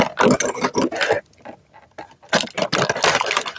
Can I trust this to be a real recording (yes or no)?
yes